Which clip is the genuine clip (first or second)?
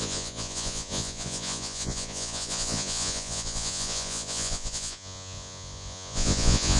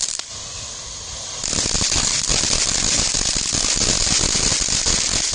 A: second